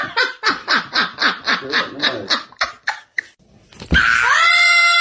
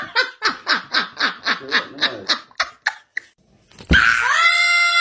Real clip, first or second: second